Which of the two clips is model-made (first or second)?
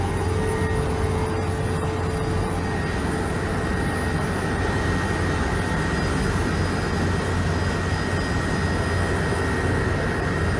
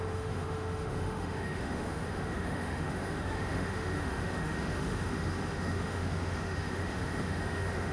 second